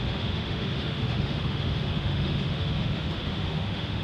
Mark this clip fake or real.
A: fake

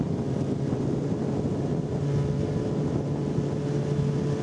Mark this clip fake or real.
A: real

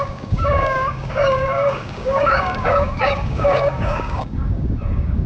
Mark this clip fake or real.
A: fake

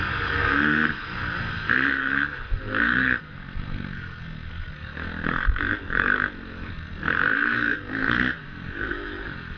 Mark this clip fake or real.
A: fake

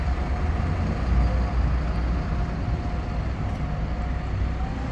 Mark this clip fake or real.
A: real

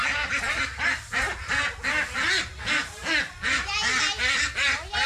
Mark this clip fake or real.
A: real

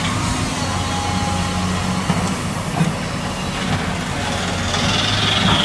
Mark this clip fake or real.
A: real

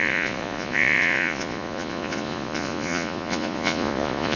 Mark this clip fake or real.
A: fake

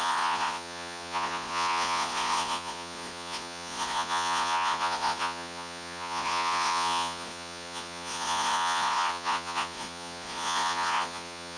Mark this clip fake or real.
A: fake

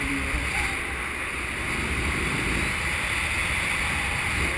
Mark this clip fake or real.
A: real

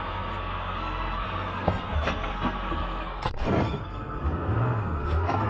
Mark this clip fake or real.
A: fake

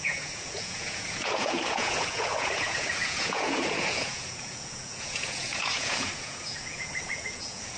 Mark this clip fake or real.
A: fake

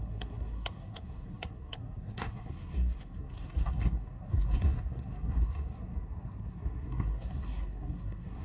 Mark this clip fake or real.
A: fake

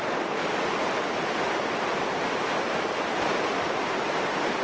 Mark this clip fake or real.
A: real